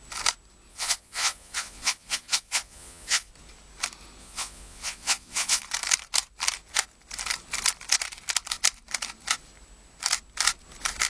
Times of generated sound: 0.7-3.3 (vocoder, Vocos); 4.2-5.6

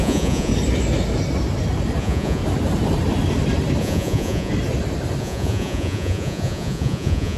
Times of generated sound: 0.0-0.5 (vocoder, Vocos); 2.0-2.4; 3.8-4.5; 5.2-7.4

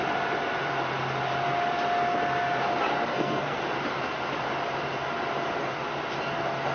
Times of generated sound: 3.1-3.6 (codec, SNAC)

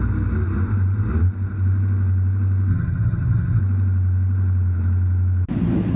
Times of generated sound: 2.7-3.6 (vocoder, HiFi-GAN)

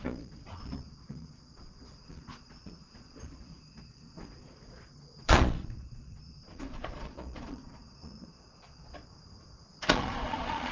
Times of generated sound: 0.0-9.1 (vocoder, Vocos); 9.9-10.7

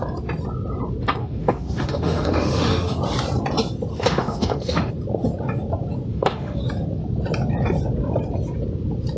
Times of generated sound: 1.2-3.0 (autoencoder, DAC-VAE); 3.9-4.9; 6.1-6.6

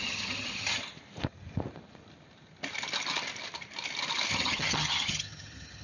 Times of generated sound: 0.0-0.8 (vocoder, HiFi-GAN); 4.3-5.8